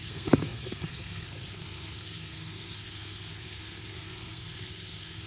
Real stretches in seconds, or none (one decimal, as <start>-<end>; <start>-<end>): none